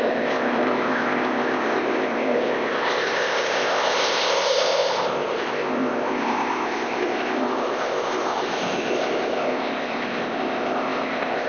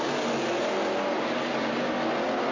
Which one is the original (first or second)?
second